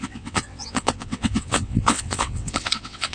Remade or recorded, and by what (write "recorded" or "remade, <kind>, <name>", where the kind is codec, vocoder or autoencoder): remade, vocoder, WaveNeXt